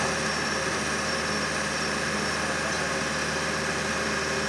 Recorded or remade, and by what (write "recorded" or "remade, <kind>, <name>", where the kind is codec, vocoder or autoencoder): recorded